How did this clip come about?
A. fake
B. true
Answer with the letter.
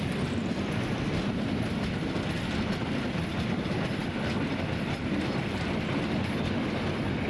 B